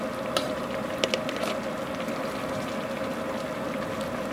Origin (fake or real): real